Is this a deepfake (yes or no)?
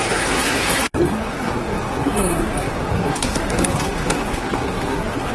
yes